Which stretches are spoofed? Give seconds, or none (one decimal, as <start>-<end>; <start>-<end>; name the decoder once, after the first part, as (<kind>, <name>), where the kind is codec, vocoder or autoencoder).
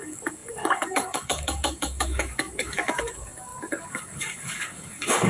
0.0-5.3 (codec, DAC)